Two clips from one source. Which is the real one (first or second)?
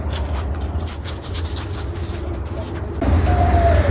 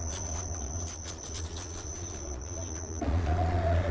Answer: first